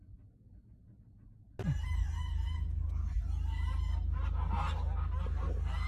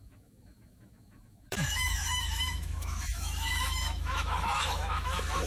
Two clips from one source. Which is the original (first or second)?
first